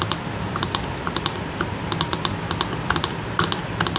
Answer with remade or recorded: recorded